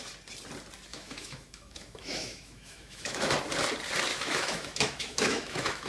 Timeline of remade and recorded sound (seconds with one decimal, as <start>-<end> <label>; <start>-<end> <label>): 0.0-0.9 recorded; 0.9-3.3 remade; 3.3-4.1 recorded; 4.1-5.9 remade